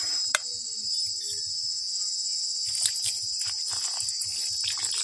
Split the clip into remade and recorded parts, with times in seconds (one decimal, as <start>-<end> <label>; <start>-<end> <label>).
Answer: 0.0-5.0 recorded